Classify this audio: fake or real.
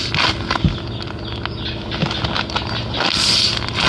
real